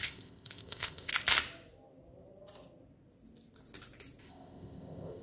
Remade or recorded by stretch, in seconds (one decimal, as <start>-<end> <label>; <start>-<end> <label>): 0.0-1.1 remade; 1.1-4.2 recorded; 4.2-5.2 remade

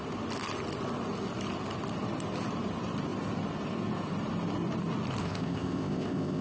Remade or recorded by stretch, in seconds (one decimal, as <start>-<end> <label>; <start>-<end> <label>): 0.0-5.2 recorded; 5.2-6.4 remade

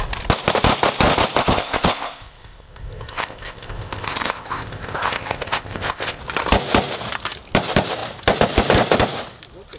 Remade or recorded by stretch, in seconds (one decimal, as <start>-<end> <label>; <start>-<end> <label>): 0.0-1.4 recorded; 1.4-6.2 remade; 6.2-9.8 recorded

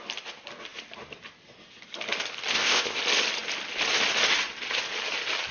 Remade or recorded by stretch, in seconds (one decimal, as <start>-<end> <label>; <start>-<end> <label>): 0.0-2.5 recorded; 2.5-3.0 remade; 3.0-5.5 recorded

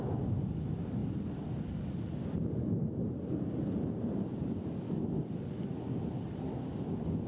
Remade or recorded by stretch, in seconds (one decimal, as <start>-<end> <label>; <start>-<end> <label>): 0.0-7.3 recorded

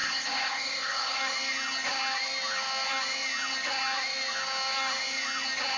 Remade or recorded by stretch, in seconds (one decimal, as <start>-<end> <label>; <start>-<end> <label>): 0.0-1.2 remade; 1.2-5.8 recorded